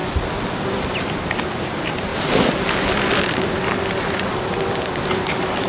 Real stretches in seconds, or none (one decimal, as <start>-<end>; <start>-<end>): 0.0-1.4; 2.1-5.3